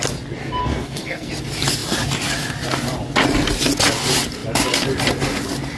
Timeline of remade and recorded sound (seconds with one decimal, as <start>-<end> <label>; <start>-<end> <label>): 0.0-0.6 recorded; 0.6-1.3 remade; 1.3-5.8 recorded